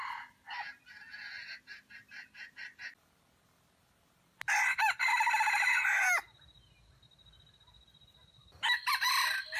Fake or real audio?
real